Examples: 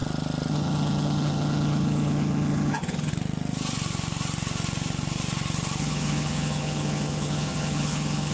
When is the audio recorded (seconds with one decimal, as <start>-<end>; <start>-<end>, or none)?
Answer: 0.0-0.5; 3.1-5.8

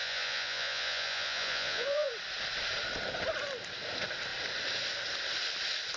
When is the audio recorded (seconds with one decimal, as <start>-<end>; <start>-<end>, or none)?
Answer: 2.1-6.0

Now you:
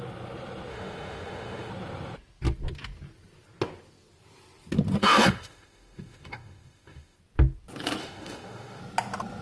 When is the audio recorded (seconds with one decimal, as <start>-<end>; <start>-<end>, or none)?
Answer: 0.0-0.7; 1.7-5.0; 7.2-8.0; 8.8-9.4

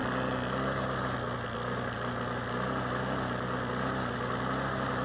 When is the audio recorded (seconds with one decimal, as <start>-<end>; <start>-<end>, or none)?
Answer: 0.0-5.0